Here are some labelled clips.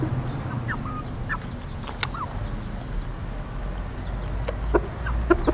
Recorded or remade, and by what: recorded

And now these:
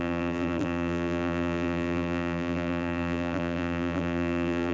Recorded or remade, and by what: remade, vocoder, BigVGAN v2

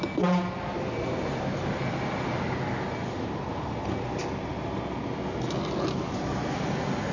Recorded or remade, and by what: recorded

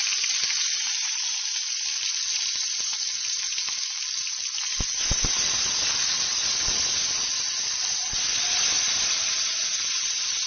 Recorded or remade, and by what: recorded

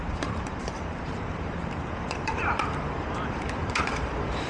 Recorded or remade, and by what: remade, vocoder, BigVGAN v2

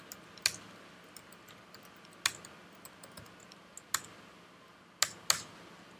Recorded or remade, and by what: recorded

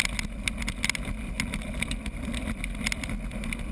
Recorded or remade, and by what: recorded